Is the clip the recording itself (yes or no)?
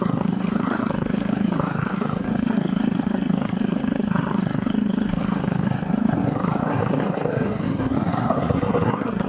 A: no